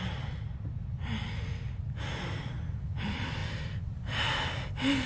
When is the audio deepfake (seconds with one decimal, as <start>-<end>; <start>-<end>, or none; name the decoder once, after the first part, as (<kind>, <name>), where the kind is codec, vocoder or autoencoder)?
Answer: 3.4-4.5 (vocoder, BigVGAN v2)

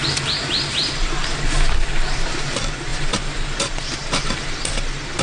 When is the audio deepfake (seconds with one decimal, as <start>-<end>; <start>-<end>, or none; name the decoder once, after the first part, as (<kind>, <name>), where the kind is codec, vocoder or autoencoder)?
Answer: none